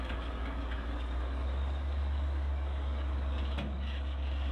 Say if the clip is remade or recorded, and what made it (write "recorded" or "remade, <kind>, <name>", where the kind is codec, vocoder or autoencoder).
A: remade, codec, DAC